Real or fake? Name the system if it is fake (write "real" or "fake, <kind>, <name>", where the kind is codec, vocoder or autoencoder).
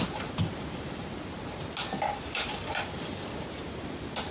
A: real